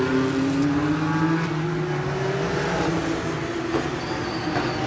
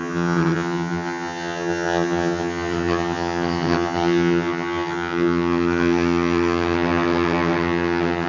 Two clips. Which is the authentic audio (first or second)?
first